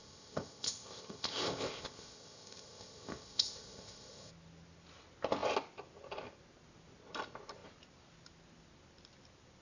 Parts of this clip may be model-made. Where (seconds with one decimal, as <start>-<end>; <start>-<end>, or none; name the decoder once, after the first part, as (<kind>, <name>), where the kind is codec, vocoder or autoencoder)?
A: 0.0-4.3 (codec, ZipCodec)